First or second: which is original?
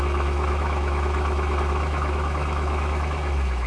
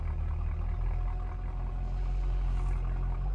second